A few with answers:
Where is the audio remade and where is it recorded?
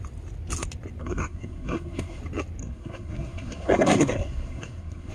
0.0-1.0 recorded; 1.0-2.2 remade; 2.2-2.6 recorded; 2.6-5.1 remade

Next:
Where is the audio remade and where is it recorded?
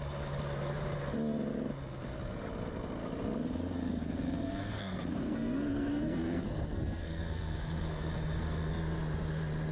0.0-3.9 recorded; 3.9-8.7 remade; 8.7-9.7 recorded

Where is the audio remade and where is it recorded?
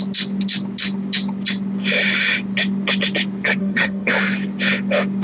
0.0-3.6 recorded; 3.6-4.1 remade; 4.1-5.2 recorded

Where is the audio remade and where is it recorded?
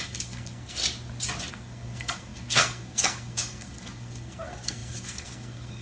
0.0-0.8 remade; 0.8-1.5 recorded; 1.5-5.8 remade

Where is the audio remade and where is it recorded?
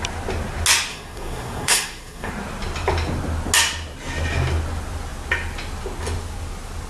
0.0-0.9 recorded; 0.9-2.3 remade; 2.3-6.9 recorded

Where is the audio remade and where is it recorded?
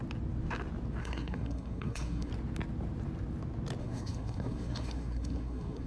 0.0-1.0 recorded; 1.0-2.3 remade; 2.3-3.8 recorded; 3.8-5.9 remade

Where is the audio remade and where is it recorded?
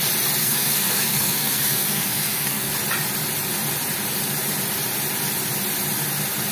0.0-0.4 recorded; 0.4-2.7 remade; 2.7-6.5 recorded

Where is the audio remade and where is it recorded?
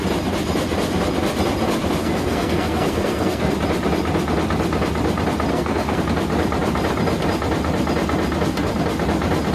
0.0-2.0 recorded; 2.0-3.5 remade; 3.5-5.5 recorded; 5.5-6.0 remade; 6.0-9.5 recorded